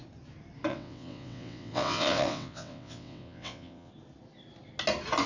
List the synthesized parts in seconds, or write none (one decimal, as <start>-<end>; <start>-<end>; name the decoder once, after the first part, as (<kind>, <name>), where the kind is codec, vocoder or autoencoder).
0.7-3.9 (vocoder, WaveNeXt)